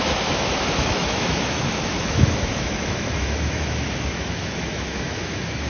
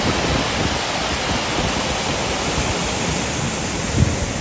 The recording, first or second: second